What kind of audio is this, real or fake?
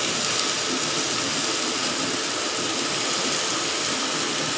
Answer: real